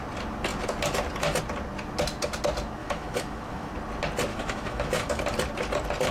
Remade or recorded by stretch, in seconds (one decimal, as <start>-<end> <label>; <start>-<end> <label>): 0.0-2.8 recorded; 2.8-3.7 remade; 3.7-4.3 recorded; 4.3-5.2 remade; 5.2-6.1 recorded